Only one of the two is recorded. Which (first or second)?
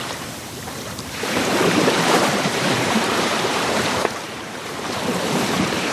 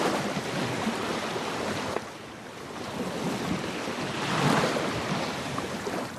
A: second